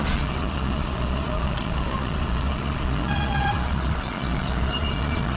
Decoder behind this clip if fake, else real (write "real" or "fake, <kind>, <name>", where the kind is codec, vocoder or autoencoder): fake, vocoder, Vocos